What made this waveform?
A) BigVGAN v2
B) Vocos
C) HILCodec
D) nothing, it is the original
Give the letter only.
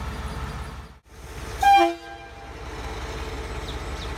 D